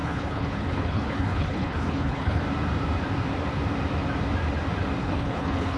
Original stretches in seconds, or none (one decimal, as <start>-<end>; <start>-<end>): 2.4-5.0